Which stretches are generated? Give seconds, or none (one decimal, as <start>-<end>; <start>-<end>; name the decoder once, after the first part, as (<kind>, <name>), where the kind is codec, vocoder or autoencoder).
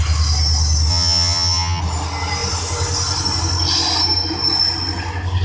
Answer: 0.9-1.8 (vocoder, HiFi-GAN)